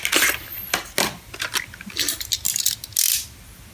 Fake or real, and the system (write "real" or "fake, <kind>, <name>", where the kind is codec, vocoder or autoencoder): real